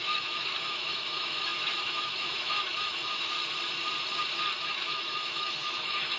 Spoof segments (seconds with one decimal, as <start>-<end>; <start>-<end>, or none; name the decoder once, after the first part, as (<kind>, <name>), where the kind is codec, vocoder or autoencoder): 0.0-3.4 (autoencoder, DAC-VAE); 4.6-6.2